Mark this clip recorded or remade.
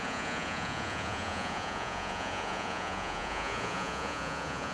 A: remade